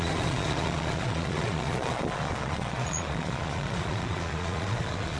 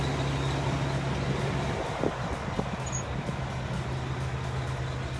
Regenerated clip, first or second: first